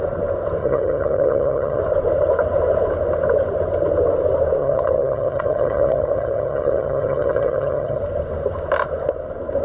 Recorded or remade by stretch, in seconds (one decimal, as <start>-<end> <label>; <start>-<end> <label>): 0.0-0.6 recorded; 0.6-1.8 remade; 1.8-4.6 recorded; 4.6-8.0 remade; 8.0-9.6 recorded